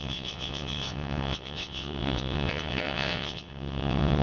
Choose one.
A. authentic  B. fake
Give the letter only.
B